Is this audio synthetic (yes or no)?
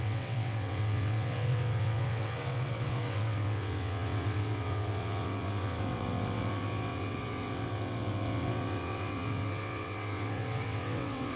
yes